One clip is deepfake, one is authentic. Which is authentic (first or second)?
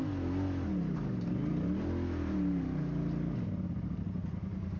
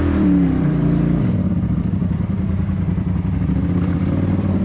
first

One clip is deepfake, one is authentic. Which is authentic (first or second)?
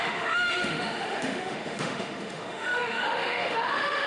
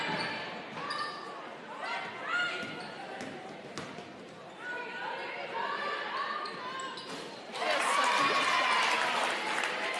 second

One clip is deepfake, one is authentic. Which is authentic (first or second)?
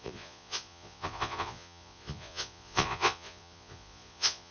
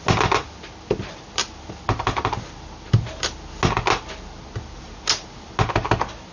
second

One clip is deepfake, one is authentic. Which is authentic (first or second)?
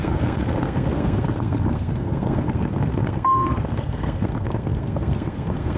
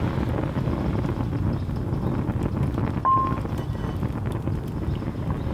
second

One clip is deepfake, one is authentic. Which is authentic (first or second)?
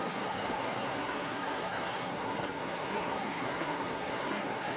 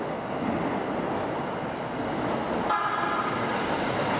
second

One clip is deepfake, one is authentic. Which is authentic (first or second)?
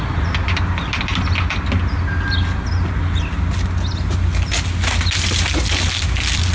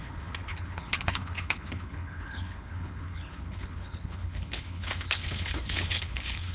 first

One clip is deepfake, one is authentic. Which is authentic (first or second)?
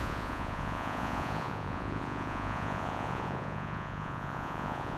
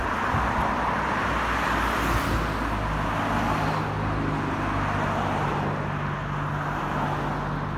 second